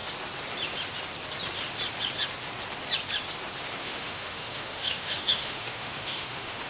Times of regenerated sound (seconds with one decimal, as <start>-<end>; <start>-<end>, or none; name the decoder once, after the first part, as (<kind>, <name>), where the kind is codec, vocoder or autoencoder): 3.8-6.7 (autoencoder, DAC-VAE)